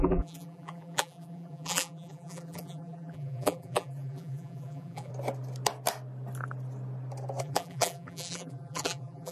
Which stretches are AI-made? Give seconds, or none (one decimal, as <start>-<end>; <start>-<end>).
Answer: 0.0-5.1; 7.4-9.3